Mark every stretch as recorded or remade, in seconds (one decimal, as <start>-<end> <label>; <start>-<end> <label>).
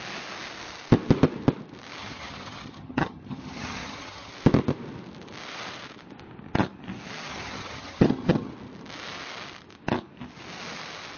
0.0-2.0 recorded; 2.0-4.3 remade; 4.3-7.3 recorded; 7.3-8.5 remade; 8.5-11.2 recorded